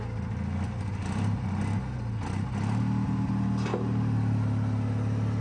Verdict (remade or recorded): recorded